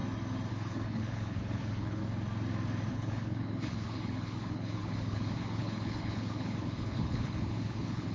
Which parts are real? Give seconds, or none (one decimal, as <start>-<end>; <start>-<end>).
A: 0.0-0.5; 2.0-2.9